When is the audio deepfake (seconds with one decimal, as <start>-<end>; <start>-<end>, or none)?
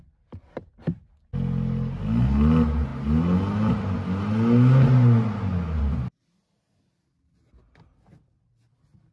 none